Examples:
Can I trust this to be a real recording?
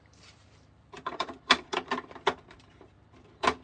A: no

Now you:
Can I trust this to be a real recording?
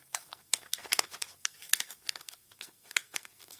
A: no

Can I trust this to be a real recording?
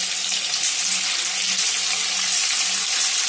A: yes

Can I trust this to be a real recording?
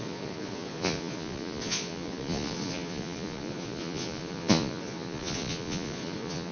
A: no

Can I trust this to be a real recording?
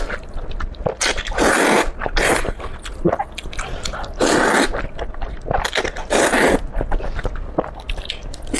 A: yes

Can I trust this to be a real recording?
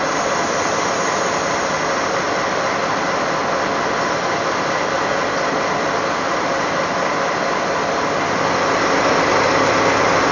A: yes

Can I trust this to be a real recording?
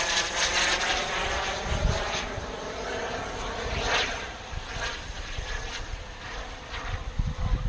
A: yes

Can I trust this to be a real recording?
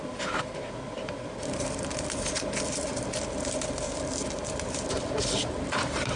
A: no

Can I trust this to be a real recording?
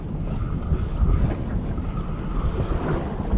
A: yes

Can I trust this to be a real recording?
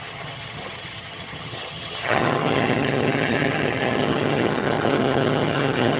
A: no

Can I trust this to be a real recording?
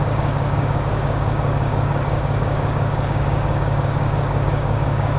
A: no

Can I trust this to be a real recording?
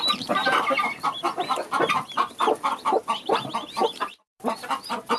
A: no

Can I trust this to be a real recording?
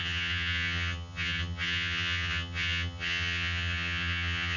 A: no